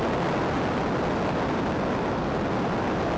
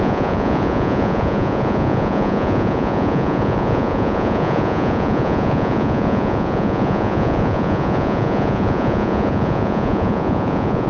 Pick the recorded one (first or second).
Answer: first